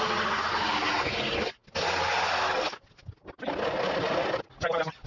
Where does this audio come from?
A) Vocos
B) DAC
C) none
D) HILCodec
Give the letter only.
C